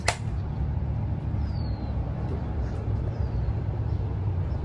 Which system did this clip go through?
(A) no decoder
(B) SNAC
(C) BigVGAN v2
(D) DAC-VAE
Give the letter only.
C